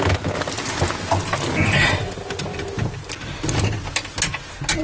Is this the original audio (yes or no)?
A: yes